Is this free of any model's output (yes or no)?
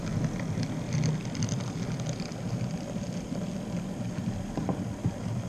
yes